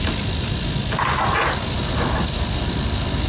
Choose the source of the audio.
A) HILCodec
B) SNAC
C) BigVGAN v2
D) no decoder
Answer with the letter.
D